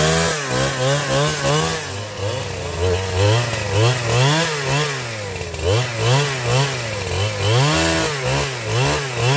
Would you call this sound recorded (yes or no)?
yes